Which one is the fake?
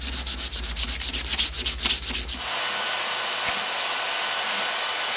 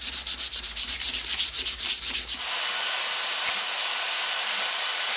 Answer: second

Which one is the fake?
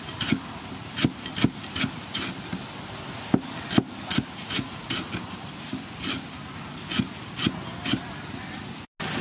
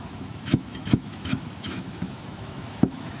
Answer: second